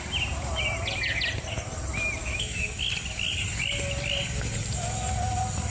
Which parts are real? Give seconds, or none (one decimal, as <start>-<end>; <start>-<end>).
0.0-2.2; 2.8-5.7